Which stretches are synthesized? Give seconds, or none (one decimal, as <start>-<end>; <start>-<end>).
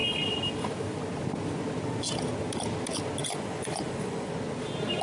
3.2-4.3